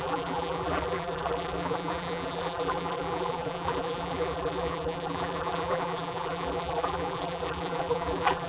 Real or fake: fake